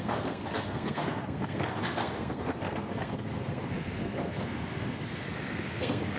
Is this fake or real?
fake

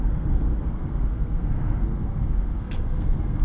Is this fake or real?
fake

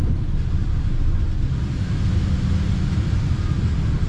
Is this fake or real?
real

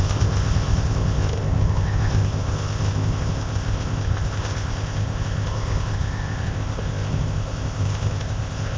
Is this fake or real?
fake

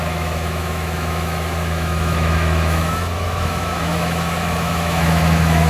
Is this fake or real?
fake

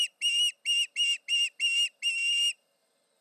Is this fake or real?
real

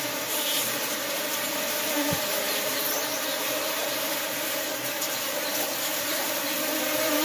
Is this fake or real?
fake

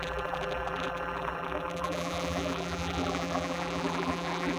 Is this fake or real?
fake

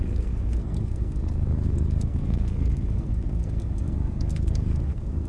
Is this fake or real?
fake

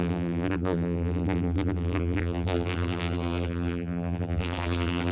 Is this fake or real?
fake